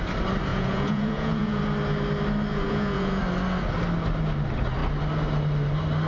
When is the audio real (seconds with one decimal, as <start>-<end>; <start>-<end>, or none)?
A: 0.0-0.5; 1.6-2.5; 3.2-6.1